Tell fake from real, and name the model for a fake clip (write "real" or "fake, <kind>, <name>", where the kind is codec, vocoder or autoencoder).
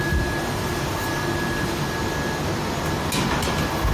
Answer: real